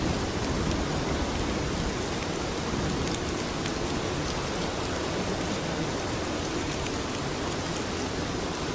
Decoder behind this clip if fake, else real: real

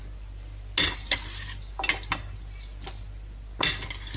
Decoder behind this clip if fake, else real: real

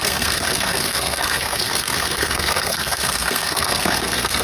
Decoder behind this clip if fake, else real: fake, codec, SNAC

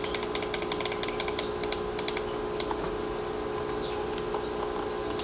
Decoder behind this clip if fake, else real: real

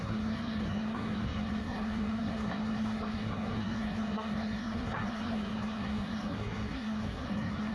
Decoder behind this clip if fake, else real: fake, codec, SNAC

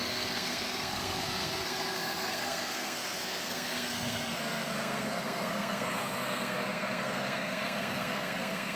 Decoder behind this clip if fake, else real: fake, codec, SNAC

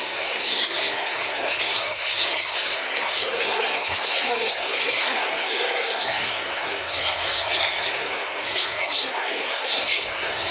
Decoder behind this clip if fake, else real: fake, codec, SNAC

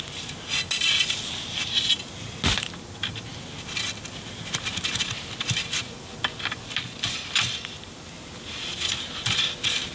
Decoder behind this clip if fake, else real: real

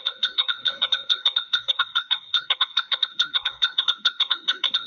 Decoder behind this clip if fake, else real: fake, codec, SNAC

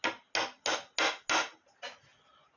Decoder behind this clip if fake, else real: real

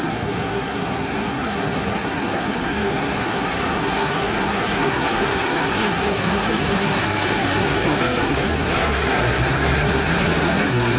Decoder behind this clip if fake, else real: fake, codec, SNAC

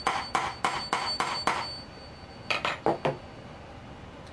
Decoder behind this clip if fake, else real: real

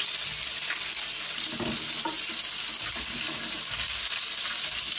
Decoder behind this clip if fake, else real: real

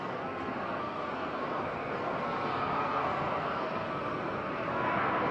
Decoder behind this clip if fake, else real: fake, codec, SNAC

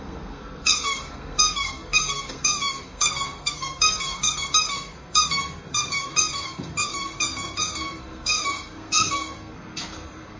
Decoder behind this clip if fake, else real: fake, codec, SNAC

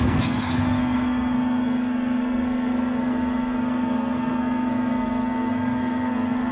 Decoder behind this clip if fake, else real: fake, codec, SNAC